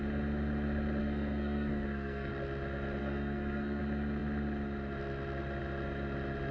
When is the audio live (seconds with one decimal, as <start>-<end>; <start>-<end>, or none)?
0.0-1.0; 2.3-3.0; 3.8-6.5